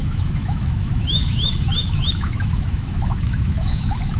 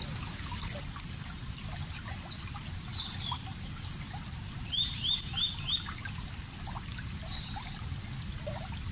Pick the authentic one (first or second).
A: second